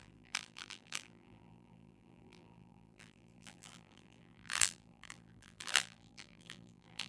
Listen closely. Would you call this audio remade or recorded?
remade